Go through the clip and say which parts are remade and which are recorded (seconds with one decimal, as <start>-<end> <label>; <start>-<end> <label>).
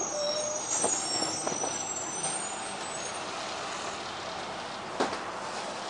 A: 0.0-5.9 recorded